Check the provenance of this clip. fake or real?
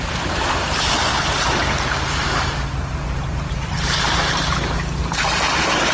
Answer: fake